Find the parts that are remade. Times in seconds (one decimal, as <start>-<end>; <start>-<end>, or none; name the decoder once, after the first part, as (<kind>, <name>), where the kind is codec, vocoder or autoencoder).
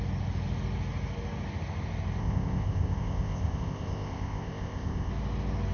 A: 2.2-5.1 (codec, ZipCodec)